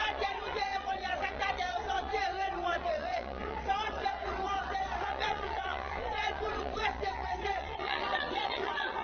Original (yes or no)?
no